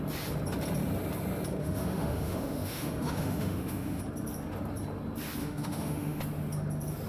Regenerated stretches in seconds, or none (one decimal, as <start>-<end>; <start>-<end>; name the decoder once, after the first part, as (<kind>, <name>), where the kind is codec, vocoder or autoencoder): 1.6-4.0 (autoencoder, DAC-VAE); 5.4-6.2